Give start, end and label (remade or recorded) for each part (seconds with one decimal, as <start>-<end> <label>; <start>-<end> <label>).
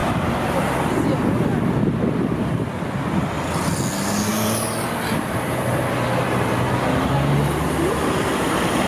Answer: 0.0-8.9 recorded